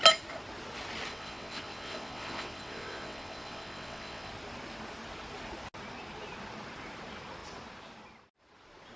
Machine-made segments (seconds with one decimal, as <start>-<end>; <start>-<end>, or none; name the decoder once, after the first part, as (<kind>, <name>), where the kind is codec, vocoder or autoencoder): 1.1-4.3 (vocoder, WaveNeXt)